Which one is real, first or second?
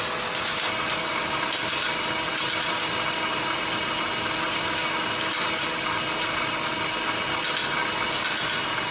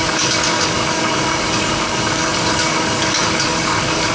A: first